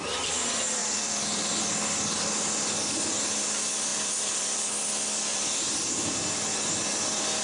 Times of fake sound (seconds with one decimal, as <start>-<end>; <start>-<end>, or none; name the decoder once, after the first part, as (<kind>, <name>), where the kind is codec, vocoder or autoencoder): 0.8-1.5 (vocoder, BigVGAN v2); 3.9-4.7; 5.3-5.9